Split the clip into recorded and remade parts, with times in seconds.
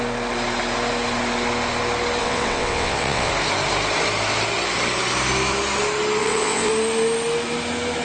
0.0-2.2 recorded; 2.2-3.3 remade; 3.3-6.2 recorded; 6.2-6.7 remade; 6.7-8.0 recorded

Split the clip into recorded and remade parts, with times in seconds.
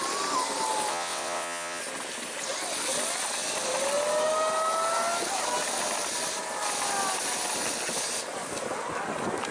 0.0-0.9 recorded; 0.9-1.8 remade; 1.8-9.5 recorded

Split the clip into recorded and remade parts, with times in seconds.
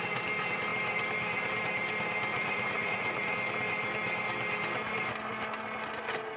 0.0-2.3 recorded; 2.3-3.3 remade; 3.3-6.4 recorded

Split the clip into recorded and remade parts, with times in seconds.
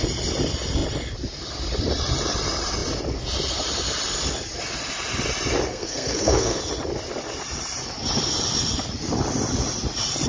0.0-5.7 recorded; 5.7-6.6 remade; 6.6-10.3 recorded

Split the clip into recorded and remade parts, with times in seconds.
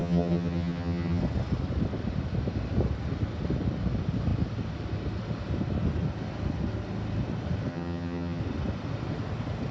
0.0-1.2 remade; 1.2-7.7 recorded; 7.7-8.4 remade; 8.4-9.7 recorded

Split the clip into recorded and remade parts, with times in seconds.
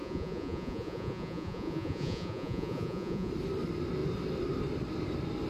0.0-3.3 remade; 3.3-5.5 recorded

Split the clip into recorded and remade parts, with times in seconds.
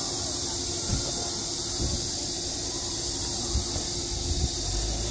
0.0-5.1 recorded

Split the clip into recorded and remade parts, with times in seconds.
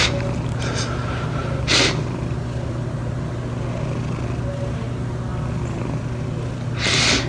0.0-7.3 recorded